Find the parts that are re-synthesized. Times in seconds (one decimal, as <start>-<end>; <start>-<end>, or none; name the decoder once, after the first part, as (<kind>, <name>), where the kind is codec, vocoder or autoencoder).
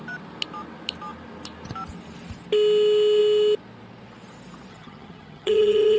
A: 4.7-6.0 (vocoder, HiFi-GAN)